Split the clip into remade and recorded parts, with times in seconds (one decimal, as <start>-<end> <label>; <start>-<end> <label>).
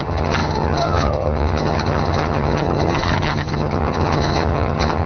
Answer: 0.0-5.1 remade